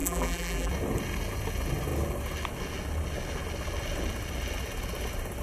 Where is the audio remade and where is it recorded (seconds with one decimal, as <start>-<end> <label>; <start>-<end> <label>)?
0.0-0.7 remade; 0.7-5.4 recorded

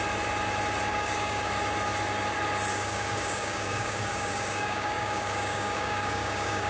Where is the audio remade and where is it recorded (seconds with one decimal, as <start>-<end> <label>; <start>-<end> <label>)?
0.0-0.9 recorded; 0.9-1.5 remade; 1.5-2.7 recorded; 2.7-6.7 remade

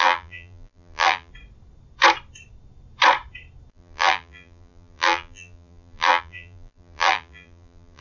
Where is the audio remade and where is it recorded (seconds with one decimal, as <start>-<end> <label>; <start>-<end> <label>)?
0.0-1.3 remade; 1.3-3.7 recorded; 3.7-8.0 remade

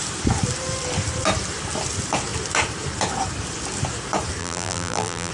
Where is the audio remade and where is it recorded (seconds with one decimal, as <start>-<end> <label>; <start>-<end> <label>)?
0.0-4.4 recorded; 4.4-5.3 remade

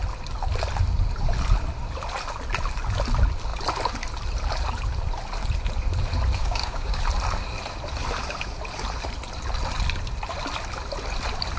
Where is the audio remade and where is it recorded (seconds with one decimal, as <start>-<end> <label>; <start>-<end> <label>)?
0.0-6.4 recorded; 6.4-7.0 remade; 7.0-11.6 recorded

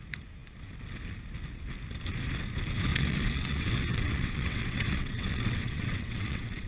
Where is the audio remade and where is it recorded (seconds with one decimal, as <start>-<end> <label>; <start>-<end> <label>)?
0.0-2.9 recorded; 2.9-6.7 remade

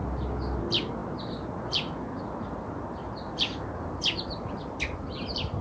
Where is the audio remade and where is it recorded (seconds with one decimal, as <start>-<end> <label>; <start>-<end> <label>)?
0.0-5.6 recorded